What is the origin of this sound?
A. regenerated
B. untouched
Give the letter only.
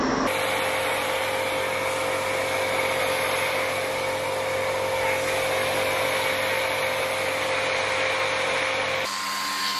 B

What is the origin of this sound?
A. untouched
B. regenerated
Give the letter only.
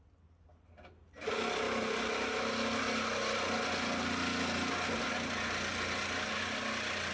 A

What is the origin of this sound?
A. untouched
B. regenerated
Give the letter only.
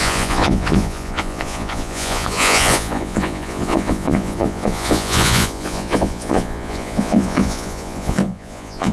B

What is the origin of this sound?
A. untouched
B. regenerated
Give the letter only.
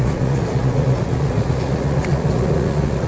B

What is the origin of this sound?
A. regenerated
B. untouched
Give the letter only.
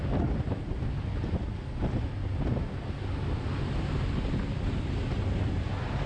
B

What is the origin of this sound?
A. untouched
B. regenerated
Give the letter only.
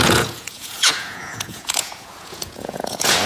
B